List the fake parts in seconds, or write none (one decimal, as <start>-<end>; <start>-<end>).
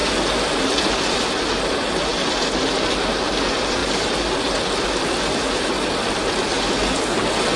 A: none